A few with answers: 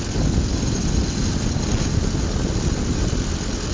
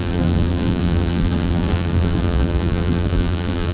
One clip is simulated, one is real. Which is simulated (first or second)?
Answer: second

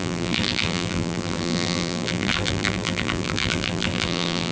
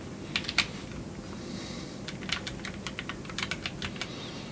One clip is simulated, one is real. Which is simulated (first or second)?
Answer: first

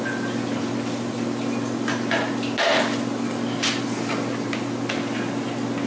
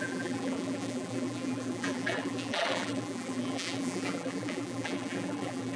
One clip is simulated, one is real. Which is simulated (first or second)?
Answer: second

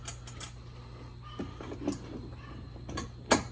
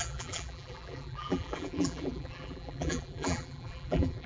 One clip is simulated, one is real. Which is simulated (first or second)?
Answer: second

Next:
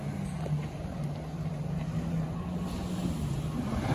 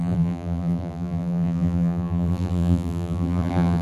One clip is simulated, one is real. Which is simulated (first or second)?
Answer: second